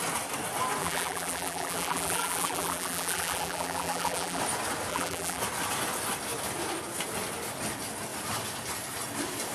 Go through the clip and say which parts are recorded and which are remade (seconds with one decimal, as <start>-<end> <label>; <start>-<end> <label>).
0.0-0.8 recorded; 0.8-4.4 remade; 4.4-4.9 recorded; 4.9-5.4 remade; 5.4-9.5 recorded

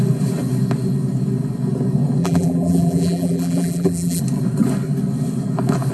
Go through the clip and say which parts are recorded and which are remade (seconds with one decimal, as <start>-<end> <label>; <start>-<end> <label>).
0.0-2.2 recorded; 2.2-4.2 remade; 4.2-5.9 recorded

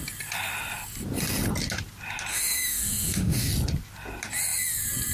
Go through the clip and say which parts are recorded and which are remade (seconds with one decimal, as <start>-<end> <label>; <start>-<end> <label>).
0.0-2.3 recorded; 2.3-3.5 remade; 3.5-5.1 recorded

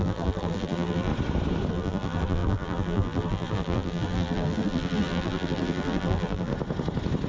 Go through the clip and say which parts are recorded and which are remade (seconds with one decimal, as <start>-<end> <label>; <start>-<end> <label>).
0.0-1.1 remade; 1.1-1.7 recorded; 1.7-6.5 remade; 6.5-7.3 recorded

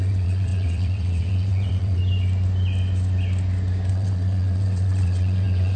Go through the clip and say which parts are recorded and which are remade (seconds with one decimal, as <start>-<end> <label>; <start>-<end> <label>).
0.0-2.0 remade; 2.0-3.9 recorded; 3.9-5.8 remade